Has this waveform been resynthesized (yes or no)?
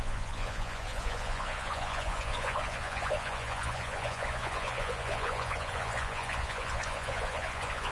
yes